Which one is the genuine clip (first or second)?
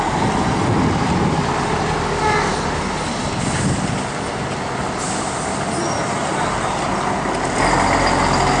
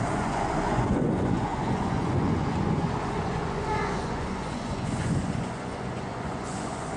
first